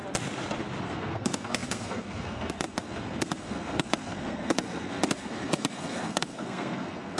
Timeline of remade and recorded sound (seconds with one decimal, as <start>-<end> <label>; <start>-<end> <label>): 0.0-0.8 recorded; 0.8-7.2 remade